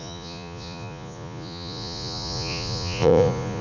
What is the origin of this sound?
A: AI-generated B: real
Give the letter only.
A